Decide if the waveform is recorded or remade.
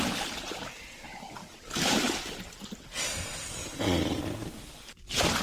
recorded